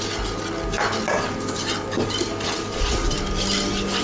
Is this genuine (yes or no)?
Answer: yes